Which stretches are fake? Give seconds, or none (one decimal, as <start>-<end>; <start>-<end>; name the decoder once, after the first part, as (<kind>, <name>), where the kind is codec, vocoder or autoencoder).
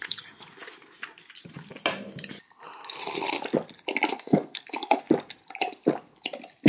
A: 4.1-5.0 (codec, SNAC)